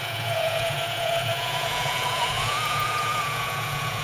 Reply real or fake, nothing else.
fake